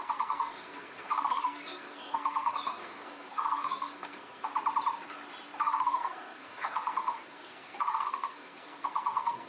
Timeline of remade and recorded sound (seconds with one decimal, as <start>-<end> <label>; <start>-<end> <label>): 0.0-4.5 remade; 4.5-5.6 recorded; 5.6-9.5 remade